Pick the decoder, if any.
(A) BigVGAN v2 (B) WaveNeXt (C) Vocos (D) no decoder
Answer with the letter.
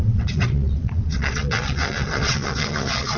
B